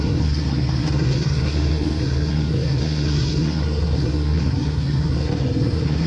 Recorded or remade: remade